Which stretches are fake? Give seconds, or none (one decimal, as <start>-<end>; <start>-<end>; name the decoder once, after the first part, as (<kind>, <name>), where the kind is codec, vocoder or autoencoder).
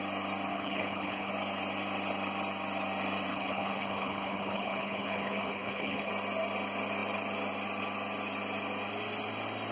0.5-1.3 (codec, HILCodec); 3.3-6.1